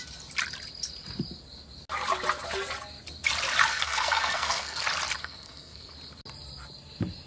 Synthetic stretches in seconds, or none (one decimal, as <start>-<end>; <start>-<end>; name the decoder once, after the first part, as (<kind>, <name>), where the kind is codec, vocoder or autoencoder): 3.7-4.8 (codec, SNAC); 5.2-5.9